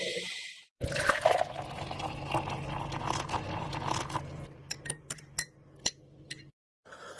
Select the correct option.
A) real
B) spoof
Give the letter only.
A